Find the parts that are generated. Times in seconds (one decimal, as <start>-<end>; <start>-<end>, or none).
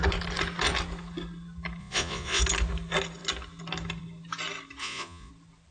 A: 1.8-2.4; 4.8-5.3